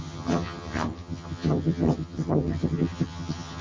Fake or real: fake